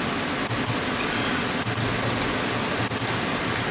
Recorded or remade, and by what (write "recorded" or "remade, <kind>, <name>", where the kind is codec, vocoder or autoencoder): recorded